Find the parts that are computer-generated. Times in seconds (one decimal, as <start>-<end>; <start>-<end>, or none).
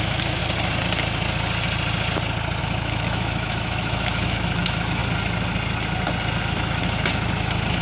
0.0-0.4; 2.6-5.0; 6.4-7.8